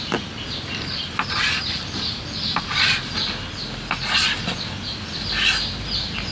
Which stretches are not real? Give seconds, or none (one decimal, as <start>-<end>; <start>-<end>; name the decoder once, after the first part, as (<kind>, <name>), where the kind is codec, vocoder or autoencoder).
0.0-3.2 (vocoder, BigVGAN v2)